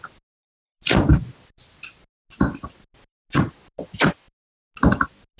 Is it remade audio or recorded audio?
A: recorded